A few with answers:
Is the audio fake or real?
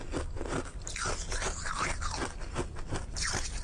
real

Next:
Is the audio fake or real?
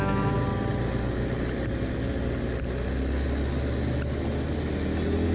real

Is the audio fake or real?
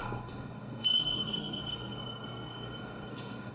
fake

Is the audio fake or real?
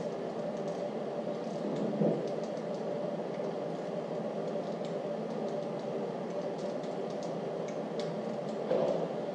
real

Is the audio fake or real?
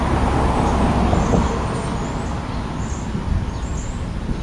real